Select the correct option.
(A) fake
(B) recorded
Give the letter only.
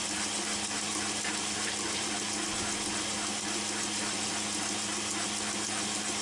B